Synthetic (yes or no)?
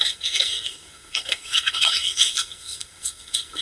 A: yes